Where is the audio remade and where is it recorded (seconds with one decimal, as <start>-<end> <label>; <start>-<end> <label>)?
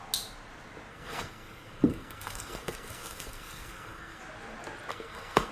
0.0-0.9 recorded; 0.9-4.2 remade; 4.2-4.9 recorded; 4.9-5.5 remade